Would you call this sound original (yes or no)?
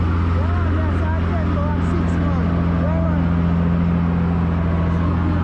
yes